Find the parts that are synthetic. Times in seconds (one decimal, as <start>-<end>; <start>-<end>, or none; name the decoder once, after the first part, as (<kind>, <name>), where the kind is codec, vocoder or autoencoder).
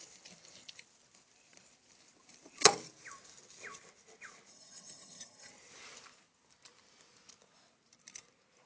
4.5-5.5 (vocoder, HiFi-GAN)